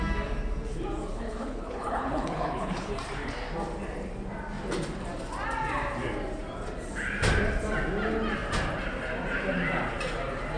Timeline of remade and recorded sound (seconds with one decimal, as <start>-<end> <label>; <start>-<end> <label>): 0.0-1.1 recorded; 1.1-2.9 remade; 2.9-10.6 recorded